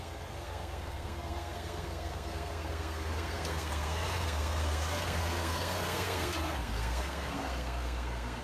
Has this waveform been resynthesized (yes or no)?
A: yes